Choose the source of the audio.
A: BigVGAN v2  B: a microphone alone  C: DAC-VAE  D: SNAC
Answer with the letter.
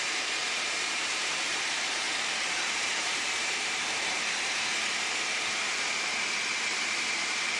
A